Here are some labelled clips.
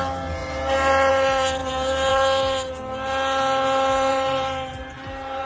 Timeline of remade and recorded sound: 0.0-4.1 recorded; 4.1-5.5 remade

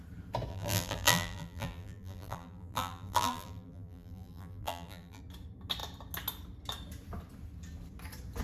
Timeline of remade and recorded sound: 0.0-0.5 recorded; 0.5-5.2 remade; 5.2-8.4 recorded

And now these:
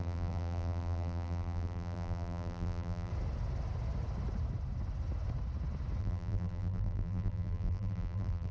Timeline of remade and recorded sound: 0.0-3.1 remade; 3.1-6.0 recorded; 6.0-8.5 remade